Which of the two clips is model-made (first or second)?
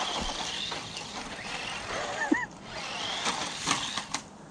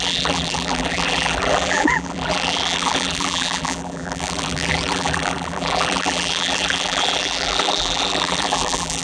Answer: second